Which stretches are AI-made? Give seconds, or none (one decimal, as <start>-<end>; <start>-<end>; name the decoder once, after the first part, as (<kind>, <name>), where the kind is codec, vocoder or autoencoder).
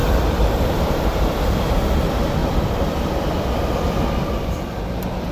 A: 0.0-1.4 (vocoder, BigVGAN v2); 2.4-3.9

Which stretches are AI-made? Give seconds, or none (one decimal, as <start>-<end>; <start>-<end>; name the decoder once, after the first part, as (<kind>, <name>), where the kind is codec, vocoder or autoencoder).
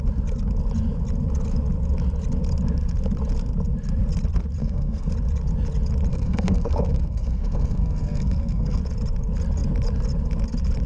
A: 4.6-5.1 (codec, SNAC); 6.1-8.8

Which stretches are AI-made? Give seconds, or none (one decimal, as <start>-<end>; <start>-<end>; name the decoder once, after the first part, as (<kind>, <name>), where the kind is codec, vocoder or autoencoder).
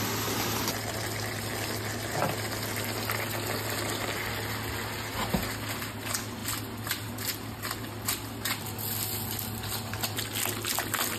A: none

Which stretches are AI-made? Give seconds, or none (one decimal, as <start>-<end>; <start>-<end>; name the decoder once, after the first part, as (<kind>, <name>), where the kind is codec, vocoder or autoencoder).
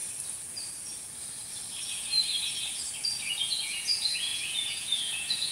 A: 3.3-5.5 (vocoder, Vocos)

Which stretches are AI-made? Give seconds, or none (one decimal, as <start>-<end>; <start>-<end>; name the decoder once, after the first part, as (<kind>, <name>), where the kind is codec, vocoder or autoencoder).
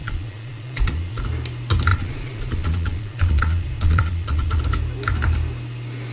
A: 0.0-1.2 (vocoder, Vocos); 1.9-4.6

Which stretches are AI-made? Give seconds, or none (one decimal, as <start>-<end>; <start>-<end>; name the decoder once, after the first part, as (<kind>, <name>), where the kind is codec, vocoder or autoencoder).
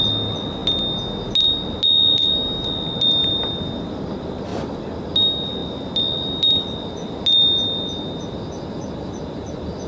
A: 3.2-4.1 (vocoder, BigVGAN v2); 4.5-5.1